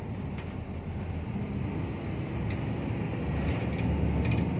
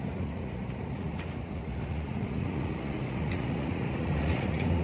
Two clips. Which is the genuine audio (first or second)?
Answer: first